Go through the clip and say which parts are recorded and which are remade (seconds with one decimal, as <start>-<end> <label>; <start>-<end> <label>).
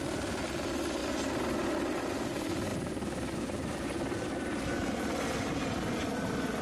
0.0-2.7 recorded; 2.7-5.0 remade; 5.0-6.6 recorded